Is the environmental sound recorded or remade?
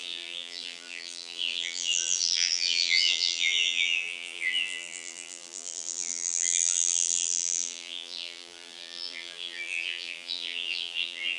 remade